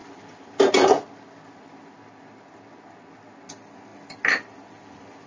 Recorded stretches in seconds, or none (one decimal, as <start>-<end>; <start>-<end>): 1.0-5.3